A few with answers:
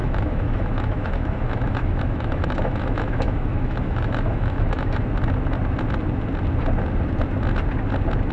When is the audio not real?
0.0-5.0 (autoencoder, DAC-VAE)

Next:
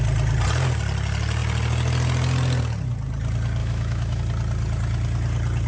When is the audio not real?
3.6-4.2 (autoencoder, DAC-VAE)

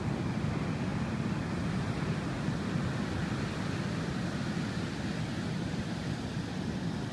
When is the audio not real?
none

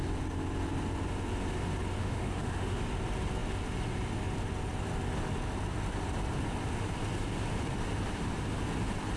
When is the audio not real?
2.0-2.8 (autoencoder, DAC-VAE)

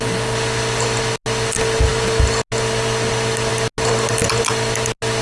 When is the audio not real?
none

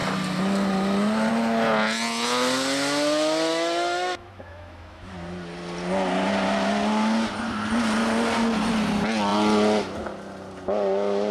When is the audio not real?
3.5-5.1 (autoencoder, DAC-VAE)

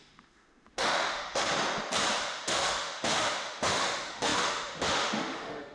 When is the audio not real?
0.0-1.5 (autoencoder, DAC-VAE); 2.2-5.7

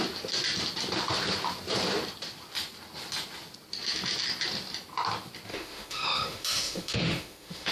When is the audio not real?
5.5-7.7 (autoencoder, DAC-VAE)